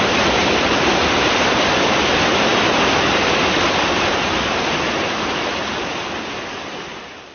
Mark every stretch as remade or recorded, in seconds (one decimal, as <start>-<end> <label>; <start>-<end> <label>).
0.0-0.4 remade; 0.4-0.9 recorded; 0.9-2.5 remade; 2.5-5.6 recorded; 5.6-7.3 remade

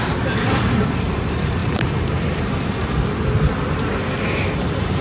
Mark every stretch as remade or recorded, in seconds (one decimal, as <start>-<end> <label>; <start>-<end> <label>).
0.0-1.6 remade; 1.6-4.6 recorded; 4.6-5.0 remade

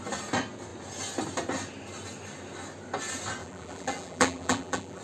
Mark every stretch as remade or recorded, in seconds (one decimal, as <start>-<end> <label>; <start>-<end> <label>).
0.0-3.4 recorded; 3.4-5.0 remade